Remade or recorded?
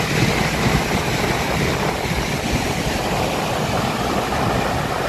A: recorded